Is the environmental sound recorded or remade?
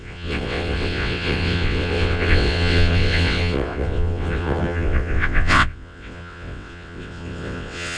remade